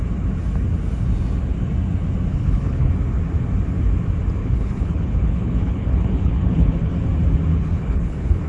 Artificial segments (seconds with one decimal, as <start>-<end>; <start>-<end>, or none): 2.3-2.9; 4.4-6.9; 7.5-8.5